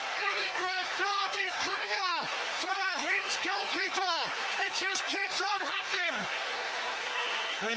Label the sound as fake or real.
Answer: fake